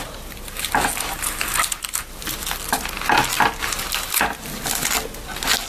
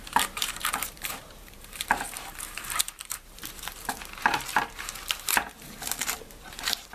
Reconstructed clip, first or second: second